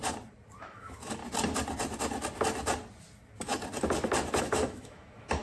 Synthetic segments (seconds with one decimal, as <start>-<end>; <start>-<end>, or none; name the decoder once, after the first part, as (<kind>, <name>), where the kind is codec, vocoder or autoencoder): 0.6-1.2 (autoencoder, DAC-VAE); 4.4-5.4